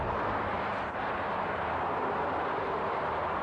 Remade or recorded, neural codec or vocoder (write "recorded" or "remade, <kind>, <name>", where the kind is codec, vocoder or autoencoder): recorded